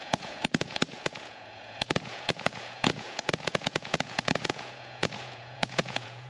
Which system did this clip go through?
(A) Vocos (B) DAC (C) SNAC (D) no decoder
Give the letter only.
A